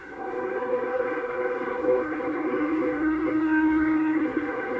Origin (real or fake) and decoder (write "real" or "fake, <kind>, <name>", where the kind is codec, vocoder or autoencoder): fake, codec, SNAC